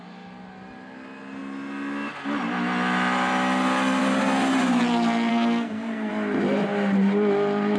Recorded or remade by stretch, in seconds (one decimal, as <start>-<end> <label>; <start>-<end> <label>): 0.0-5.3 recorded; 5.3-6.1 remade; 6.1-7.8 recorded